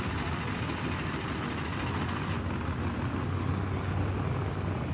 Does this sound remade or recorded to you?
recorded